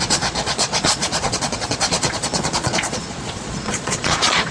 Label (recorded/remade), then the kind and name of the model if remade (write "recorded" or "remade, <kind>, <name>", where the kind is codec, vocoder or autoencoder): remade, vocoder, Vocos